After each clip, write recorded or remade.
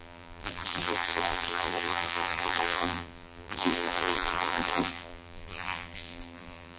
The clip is remade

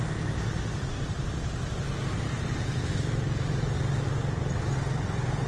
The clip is recorded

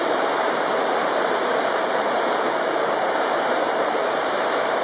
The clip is remade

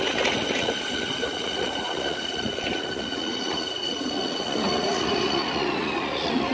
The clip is remade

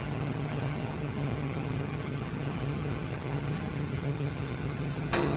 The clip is remade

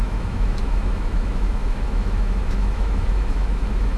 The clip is remade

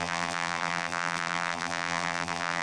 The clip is remade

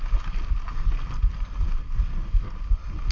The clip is recorded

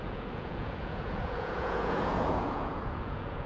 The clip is remade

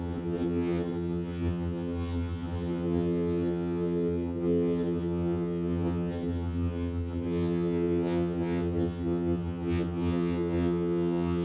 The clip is remade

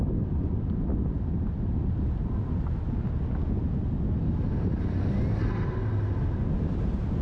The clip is recorded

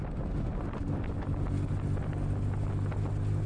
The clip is recorded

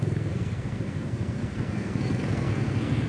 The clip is remade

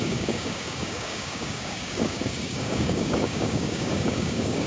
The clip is remade